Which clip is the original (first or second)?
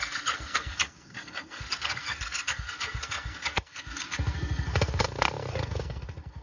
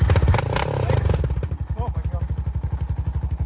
second